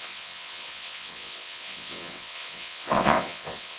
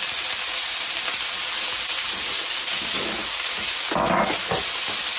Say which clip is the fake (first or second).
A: first